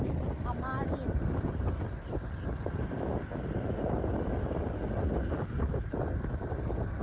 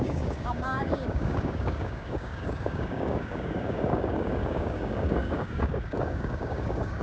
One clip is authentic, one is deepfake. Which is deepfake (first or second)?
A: second